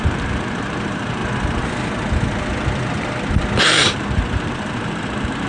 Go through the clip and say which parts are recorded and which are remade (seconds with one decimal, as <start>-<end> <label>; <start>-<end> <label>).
0.0-1.2 remade; 1.2-3.6 recorded; 3.6-5.5 remade